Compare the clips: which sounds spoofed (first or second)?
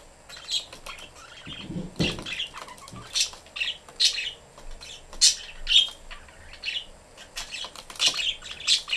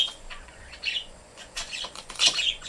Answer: second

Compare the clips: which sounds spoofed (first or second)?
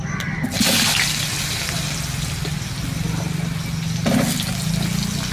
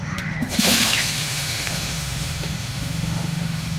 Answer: second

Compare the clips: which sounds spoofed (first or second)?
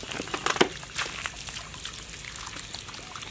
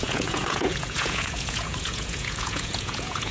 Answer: second